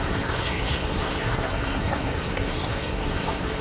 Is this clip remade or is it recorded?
remade